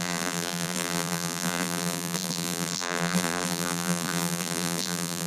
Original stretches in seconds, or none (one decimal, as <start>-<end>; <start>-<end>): none